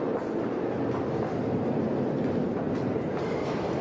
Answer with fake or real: real